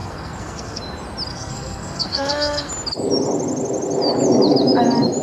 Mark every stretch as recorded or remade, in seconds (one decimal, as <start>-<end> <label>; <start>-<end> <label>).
0.0-0.8 remade; 0.8-1.3 recorded; 1.3-2.7 remade; 2.7-5.2 recorded